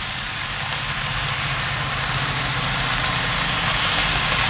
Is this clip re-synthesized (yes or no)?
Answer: no